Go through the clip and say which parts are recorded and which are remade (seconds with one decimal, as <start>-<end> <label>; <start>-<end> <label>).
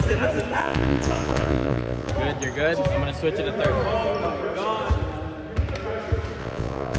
0.0-0.6 recorded; 0.6-2.1 remade; 2.1-6.4 recorded; 6.4-7.0 remade